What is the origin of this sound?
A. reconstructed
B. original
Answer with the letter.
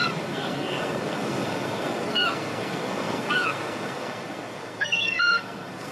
A